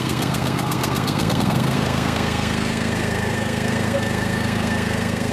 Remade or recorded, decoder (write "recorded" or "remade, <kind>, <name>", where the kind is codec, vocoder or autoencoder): remade, codec, SNAC